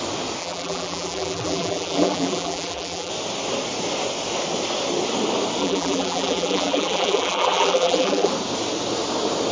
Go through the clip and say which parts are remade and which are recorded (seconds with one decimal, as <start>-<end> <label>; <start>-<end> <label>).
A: 0.0-0.4 recorded; 0.4-3.1 remade; 3.1-5.6 recorded; 5.6-8.3 remade; 8.3-9.5 recorded